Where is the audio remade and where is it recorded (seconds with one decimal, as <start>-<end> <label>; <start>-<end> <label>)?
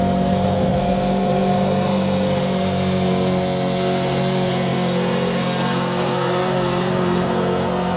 0.0-8.0 remade